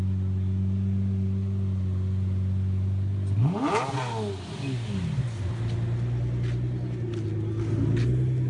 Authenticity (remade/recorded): recorded